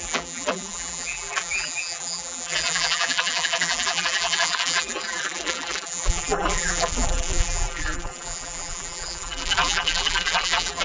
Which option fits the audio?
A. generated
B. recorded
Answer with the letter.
A